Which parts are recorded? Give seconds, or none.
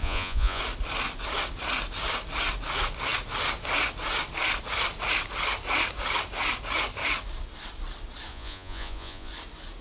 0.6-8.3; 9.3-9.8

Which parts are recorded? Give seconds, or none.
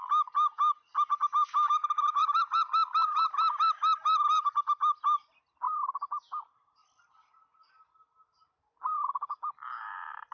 0.0-10.3